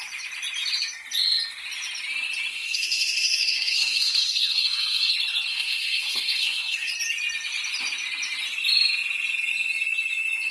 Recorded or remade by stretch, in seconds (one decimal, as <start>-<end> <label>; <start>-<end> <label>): 0.0-2.5 recorded; 2.5-5.1 remade; 5.1-5.5 recorded; 5.5-6.9 remade; 6.9-10.5 recorded